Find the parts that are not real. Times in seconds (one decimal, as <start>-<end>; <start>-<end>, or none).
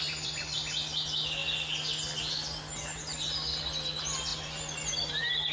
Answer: none